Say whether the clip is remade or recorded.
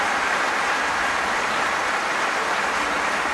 recorded